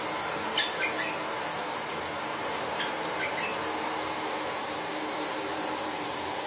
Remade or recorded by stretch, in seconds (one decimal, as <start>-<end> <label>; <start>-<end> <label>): 0.0-6.5 recorded